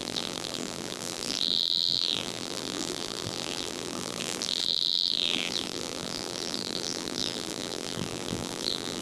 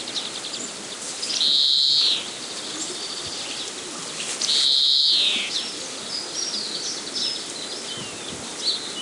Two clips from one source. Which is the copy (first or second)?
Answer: first